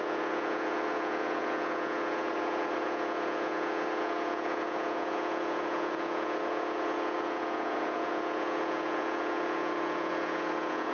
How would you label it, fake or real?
fake